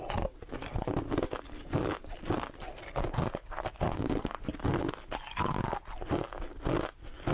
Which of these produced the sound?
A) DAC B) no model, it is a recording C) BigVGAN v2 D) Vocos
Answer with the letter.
B